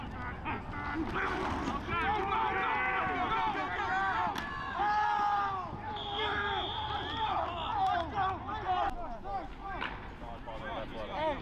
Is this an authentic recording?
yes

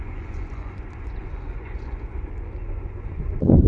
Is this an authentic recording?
no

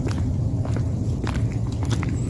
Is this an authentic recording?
yes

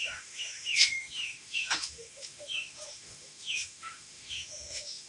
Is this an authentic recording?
no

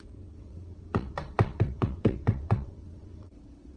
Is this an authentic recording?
no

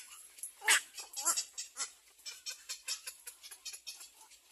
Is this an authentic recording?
yes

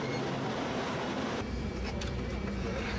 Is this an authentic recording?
no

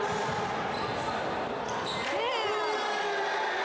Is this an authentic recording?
yes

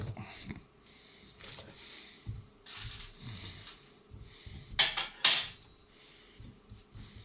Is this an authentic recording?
yes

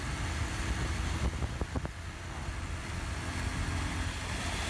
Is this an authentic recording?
yes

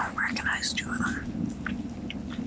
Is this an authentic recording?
yes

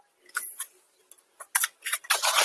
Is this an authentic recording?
yes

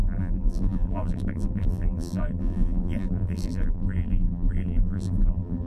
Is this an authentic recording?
no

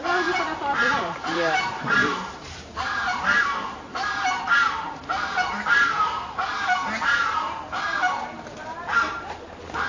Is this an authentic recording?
no